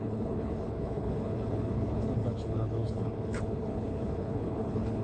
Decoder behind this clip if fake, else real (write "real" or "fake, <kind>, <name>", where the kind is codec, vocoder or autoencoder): fake, codec, HILCodec